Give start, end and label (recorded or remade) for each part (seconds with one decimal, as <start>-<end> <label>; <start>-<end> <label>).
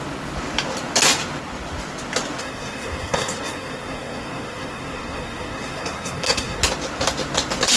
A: 0.0-2.4 recorded; 2.4-6.6 remade; 6.6-7.8 recorded